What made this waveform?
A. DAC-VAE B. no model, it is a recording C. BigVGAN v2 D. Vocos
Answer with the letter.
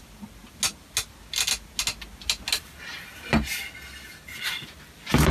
B